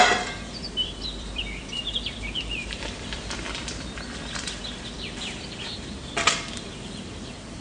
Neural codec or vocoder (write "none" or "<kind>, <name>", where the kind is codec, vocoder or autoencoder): vocoder, BigVGAN v2